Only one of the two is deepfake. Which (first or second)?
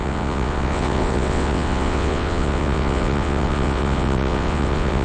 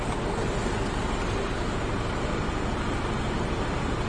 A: first